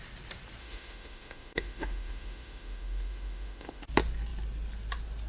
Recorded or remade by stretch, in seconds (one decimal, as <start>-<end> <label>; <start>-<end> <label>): 0.0-0.6 recorded; 0.6-3.8 remade; 3.8-5.3 recorded